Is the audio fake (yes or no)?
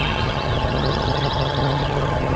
yes